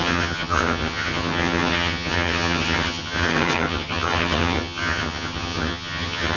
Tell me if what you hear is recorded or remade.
remade